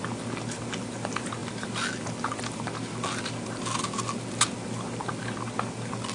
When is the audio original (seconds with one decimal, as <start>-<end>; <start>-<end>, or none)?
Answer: 0.0-6.1